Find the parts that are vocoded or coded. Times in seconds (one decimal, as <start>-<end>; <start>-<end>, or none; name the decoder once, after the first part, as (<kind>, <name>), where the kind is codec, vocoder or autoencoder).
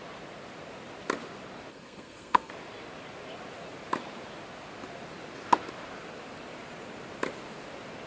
1.7-2.5 (codec, SNAC)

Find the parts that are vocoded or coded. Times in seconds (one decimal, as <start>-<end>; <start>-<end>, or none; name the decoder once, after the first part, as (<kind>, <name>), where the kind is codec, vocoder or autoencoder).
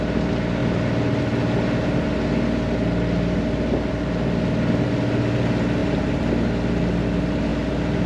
none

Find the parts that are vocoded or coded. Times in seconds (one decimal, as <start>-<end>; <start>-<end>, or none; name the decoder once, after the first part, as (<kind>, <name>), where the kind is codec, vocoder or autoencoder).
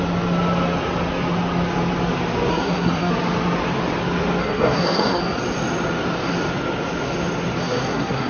2.5-3.1 (codec, SNAC); 4.4-5.2; 7.6-8.3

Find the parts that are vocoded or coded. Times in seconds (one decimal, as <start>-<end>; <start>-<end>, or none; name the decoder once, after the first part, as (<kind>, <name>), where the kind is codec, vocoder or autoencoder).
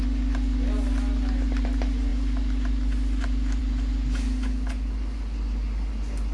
none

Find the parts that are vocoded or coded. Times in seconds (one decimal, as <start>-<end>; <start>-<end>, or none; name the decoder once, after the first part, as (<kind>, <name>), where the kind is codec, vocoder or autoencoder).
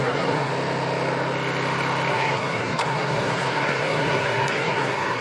0.0-0.5 (codec, SNAC); 2.1-5.2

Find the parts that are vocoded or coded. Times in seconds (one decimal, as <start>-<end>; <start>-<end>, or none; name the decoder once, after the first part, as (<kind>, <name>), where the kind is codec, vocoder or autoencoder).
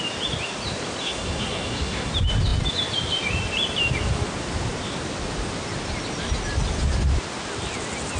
1.0-2.1 (codec, SNAC)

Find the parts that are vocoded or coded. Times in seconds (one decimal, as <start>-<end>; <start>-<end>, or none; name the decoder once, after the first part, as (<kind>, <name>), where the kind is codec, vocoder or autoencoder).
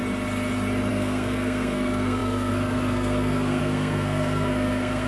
0.9-5.1 (codec, SNAC)